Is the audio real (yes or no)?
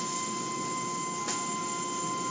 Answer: yes